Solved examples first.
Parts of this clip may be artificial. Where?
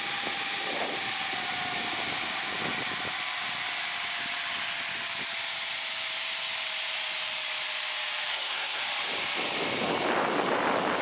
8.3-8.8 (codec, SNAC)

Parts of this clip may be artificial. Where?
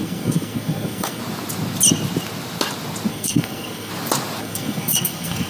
0.0-1.2 (codec, SNAC); 3.1-3.9; 4.4-5.5